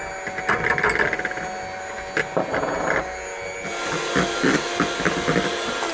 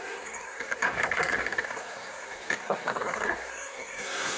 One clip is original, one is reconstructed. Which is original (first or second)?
first